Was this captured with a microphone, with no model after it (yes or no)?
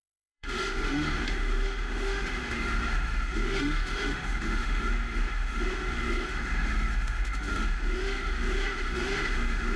no